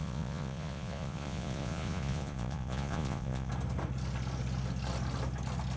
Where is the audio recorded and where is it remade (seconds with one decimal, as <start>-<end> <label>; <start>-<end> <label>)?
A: 0.0-3.5 remade; 3.5-5.8 recorded